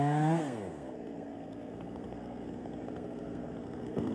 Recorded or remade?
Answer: remade